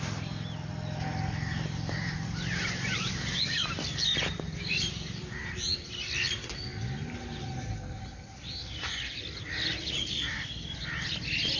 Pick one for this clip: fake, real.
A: real